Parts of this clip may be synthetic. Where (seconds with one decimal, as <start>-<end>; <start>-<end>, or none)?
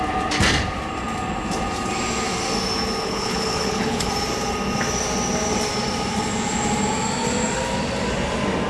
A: 3.0-4.1